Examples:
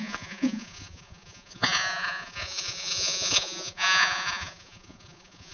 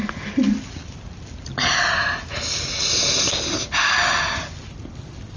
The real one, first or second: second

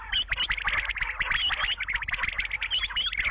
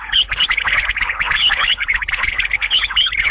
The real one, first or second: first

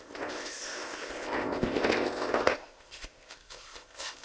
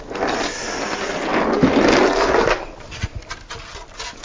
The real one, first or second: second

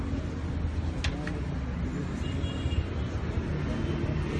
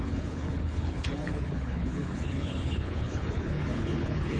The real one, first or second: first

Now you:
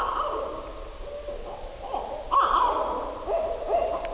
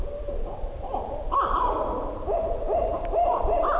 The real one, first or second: first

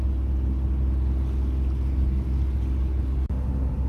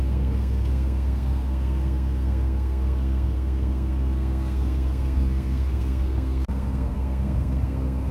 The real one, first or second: first